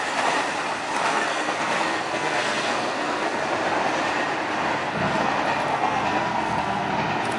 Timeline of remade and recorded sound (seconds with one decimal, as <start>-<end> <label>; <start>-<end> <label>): 0.0-1.1 recorded; 1.1-3.4 remade; 3.4-4.8 recorded; 4.8-5.3 remade; 5.3-5.7 recorded; 5.7-6.9 remade; 6.9-7.4 recorded